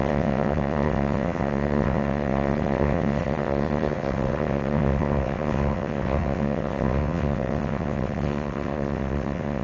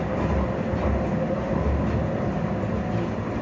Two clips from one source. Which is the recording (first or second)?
second